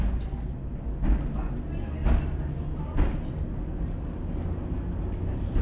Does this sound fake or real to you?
real